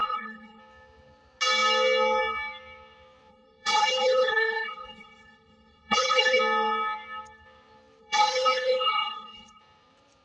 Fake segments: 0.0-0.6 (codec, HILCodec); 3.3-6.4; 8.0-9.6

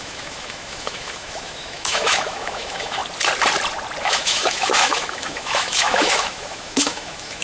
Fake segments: 0.0-3.0 (autoencoder, DAC-VAE); 4.0-7.4